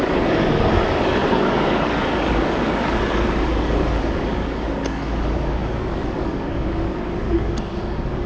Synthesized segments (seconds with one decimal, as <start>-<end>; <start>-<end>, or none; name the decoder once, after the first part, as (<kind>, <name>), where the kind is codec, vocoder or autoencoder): 0.0-8.3 (codec, DAC)